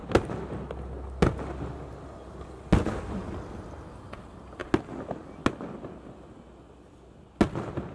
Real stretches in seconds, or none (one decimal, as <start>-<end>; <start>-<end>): 0.0-7.9